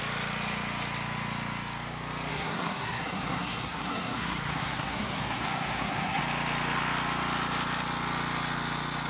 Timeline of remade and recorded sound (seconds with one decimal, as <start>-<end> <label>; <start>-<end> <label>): 0.0-2.3 recorded; 2.3-6.2 remade; 6.2-9.1 recorded